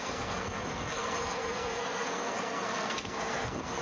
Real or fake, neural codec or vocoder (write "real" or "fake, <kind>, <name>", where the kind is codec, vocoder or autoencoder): fake, codec, SNAC